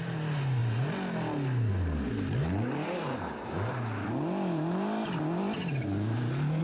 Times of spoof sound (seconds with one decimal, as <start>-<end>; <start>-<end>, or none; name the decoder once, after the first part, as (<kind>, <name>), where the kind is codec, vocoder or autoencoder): 2.4-3.7 (vocoder, BigVGAN v2)